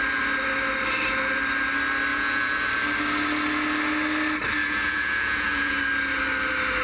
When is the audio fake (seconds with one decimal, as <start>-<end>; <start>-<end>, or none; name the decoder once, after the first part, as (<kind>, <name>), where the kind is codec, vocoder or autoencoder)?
2.1-2.7 (vocoder, Vocos); 4.6-5.8